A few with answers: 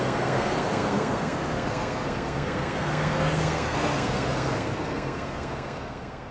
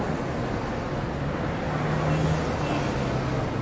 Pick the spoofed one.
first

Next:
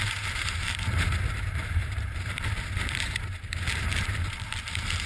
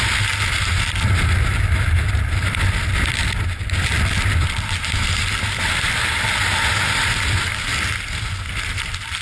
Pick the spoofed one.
first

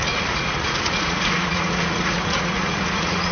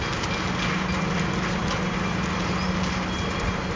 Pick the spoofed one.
first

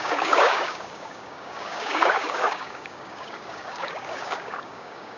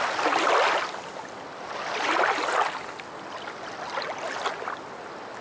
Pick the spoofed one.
first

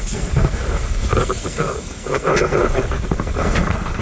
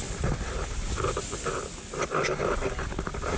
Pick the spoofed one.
first